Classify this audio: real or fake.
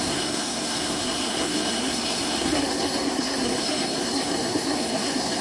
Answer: fake